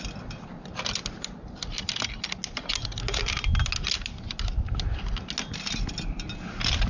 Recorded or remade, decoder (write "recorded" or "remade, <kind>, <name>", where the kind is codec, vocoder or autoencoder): recorded